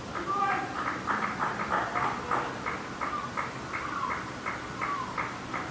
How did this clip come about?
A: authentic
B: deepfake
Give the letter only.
A